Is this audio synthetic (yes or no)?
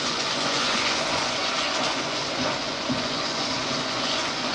yes